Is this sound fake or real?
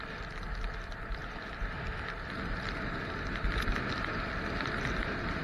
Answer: real